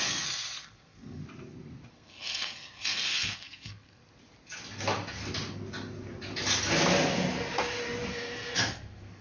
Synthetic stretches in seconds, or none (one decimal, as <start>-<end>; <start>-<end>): 0.0-1.2; 1.9-4.0; 8.1-9.2